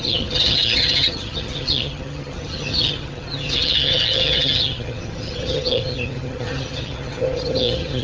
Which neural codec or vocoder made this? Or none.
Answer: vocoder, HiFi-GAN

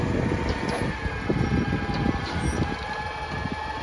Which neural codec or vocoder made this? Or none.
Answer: none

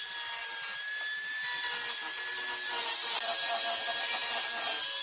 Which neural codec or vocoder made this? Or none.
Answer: none